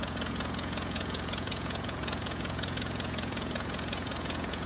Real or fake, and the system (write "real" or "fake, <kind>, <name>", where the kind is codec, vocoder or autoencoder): fake, vocoder, Vocos